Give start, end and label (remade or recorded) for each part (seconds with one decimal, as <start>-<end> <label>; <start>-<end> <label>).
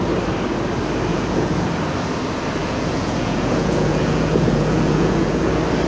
0.0-1.1 recorded; 1.1-1.7 remade; 1.7-2.6 recorded; 2.6-5.5 remade; 5.5-5.9 recorded